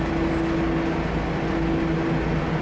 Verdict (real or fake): real